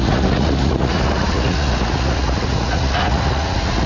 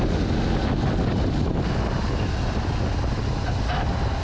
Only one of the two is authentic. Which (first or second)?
second